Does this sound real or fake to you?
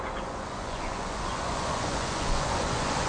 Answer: fake